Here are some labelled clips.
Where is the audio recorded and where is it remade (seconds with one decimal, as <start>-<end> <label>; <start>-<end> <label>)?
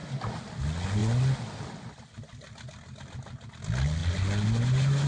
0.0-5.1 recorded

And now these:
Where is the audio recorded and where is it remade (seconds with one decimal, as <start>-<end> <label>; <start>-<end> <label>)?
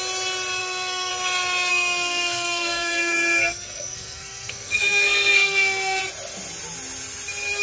0.0-0.6 recorded; 0.6-1.1 remade; 1.1-1.7 recorded; 1.7-6.0 remade; 6.0-7.6 recorded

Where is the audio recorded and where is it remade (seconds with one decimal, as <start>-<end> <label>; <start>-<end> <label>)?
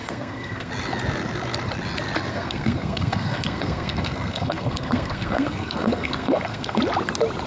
0.0-0.7 remade; 0.7-2.3 recorded; 2.3-6.8 remade; 6.8-7.5 recorded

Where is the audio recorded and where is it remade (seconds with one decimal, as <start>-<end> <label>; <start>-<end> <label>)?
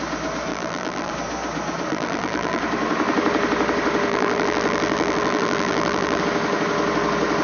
0.0-0.5 recorded; 0.5-1.1 remade; 1.1-1.9 recorded; 1.9-2.6 remade; 2.6-4.1 recorded; 4.1-6.2 remade; 6.2-7.4 recorded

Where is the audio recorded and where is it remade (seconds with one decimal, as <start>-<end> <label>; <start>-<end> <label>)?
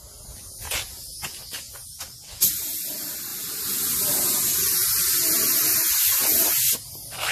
0.0-7.3 recorded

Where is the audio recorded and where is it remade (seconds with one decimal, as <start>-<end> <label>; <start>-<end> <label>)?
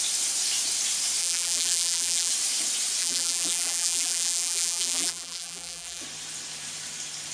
0.0-1.2 recorded; 1.2-2.3 remade; 2.3-3.0 recorded; 3.0-6.0 remade; 6.0-7.3 recorded